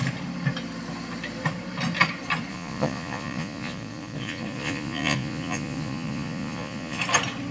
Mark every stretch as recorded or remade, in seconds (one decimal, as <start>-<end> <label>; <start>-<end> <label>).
0.0-2.5 recorded; 2.5-7.0 remade; 7.0-7.5 recorded

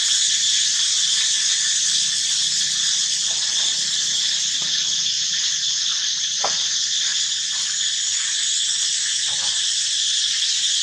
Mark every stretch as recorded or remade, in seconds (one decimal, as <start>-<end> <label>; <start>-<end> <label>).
0.0-10.8 recorded

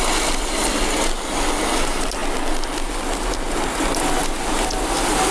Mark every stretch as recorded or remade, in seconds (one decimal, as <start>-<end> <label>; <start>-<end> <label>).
0.0-5.3 recorded

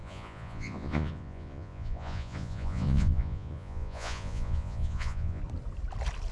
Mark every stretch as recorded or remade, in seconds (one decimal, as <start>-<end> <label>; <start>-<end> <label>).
0.0-5.4 remade; 5.4-6.3 recorded

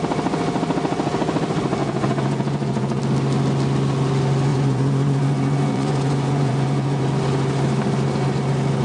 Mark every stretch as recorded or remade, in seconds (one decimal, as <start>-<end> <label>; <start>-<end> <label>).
0.0-1.8 recorded; 1.8-3.0 remade; 3.0-4.5 recorded; 4.5-7.0 remade; 7.0-8.8 recorded

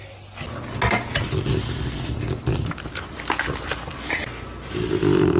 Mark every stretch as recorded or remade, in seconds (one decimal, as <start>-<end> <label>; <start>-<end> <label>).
0.0-5.4 recorded